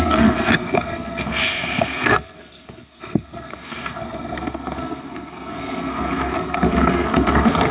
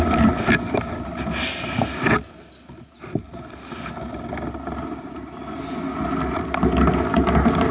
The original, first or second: second